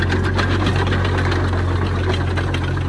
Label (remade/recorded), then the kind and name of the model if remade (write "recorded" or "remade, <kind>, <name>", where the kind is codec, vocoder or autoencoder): recorded